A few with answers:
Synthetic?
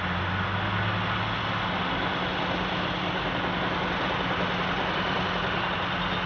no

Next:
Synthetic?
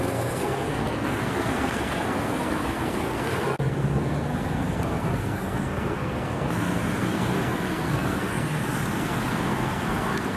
yes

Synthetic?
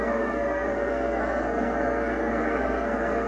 yes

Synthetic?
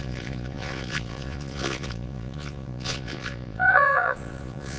yes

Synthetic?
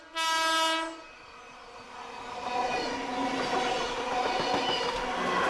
no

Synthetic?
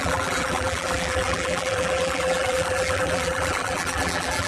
yes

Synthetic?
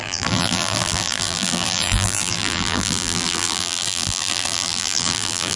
yes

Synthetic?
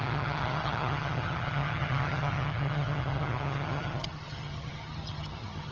yes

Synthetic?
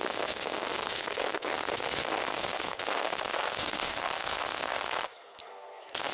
yes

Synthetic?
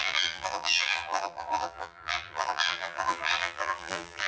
yes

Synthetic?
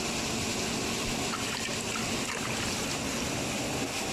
no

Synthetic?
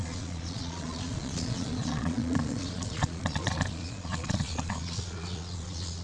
yes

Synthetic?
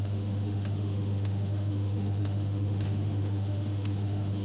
yes